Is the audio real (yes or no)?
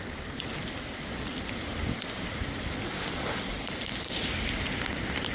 yes